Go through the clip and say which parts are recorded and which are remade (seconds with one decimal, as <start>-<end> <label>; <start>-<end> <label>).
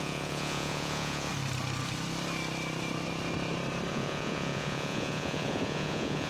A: 0.0-1.3 remade; 1.3-3.9 recorded; 3.9-6.3 remade